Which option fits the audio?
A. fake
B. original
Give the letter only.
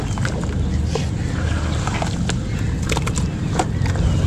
B